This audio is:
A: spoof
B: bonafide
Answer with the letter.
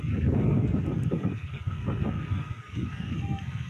A